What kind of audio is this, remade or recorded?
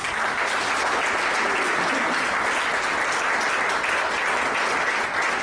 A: recorded